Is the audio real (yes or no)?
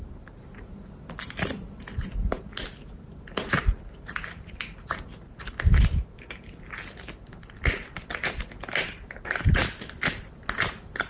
yes